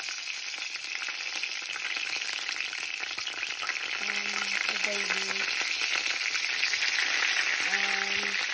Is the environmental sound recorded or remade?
recorded